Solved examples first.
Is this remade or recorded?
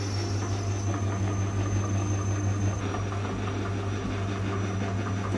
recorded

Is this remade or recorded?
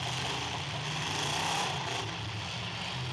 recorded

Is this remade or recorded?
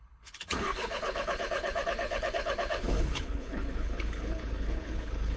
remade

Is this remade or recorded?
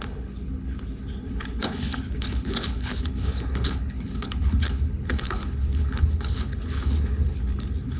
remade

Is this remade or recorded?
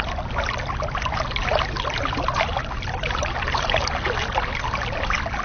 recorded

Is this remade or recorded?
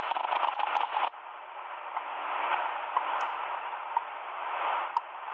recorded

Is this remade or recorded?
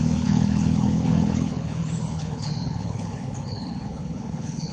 remade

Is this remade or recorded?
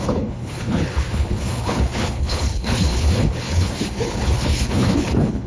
remade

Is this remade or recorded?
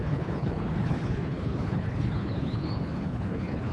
remade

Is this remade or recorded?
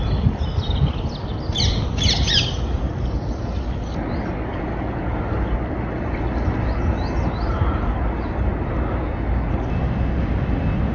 recorded